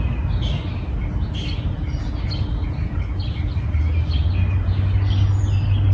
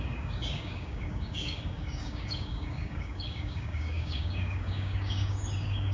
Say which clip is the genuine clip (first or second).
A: first